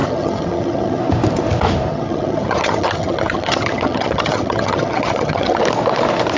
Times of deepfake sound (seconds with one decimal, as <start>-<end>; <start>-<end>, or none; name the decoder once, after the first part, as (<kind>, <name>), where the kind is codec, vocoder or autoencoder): 0.0-1.0 (vocoder, HiFi-GAN); 1.9-5.6